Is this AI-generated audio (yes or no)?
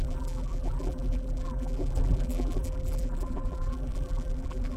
yes